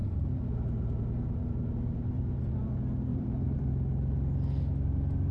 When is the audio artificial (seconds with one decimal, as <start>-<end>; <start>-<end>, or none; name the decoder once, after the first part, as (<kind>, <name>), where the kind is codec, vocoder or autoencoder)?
0.0-2.4 (vocoder, BigVGAN v2); 3.1-3.7